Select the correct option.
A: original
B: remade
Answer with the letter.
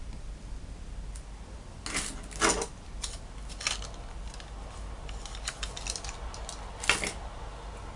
A